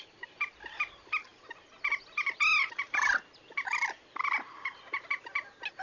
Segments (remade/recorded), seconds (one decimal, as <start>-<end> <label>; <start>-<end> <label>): 0.0-5.8 recorded